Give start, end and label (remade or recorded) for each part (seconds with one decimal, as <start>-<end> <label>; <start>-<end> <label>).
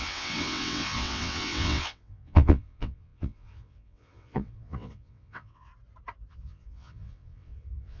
0.0-5.7 remade; 5.7-6.3 recorded; 6.3-8.0 remade